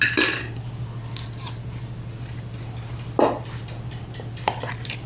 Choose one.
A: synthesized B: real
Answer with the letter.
B